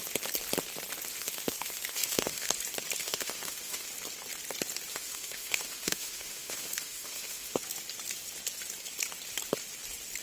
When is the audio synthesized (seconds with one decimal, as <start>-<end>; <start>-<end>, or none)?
1.1-2.5; 3.0-3.9; 4.9-7.6